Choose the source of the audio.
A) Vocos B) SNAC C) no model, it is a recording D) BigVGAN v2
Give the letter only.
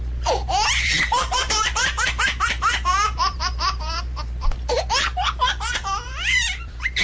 D